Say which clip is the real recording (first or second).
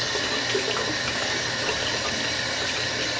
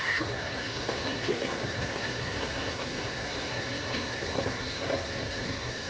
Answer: first